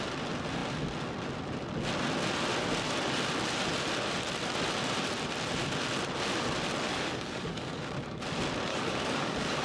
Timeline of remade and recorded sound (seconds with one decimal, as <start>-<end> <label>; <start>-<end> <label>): 0.0-6.9 recorded; 6.9-8.2 remade; 8.2-8.7 recorded; 8.7-9.6 remade